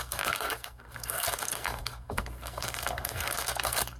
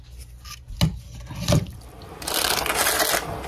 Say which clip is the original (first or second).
second